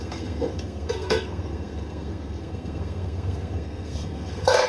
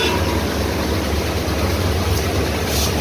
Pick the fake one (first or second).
first